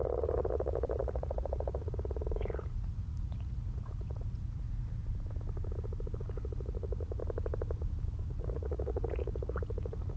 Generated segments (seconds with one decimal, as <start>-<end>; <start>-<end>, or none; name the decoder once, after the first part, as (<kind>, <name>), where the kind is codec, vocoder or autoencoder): 0.0-5.0 (vocoder, Vocos); 6.2-7.2; 8.3-10.2